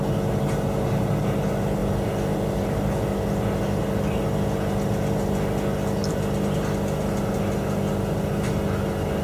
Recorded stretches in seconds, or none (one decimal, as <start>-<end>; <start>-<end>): 0.0-9.2